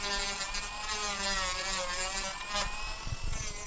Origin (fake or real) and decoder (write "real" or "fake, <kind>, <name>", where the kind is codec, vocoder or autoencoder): real